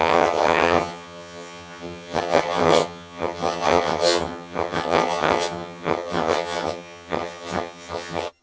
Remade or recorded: remade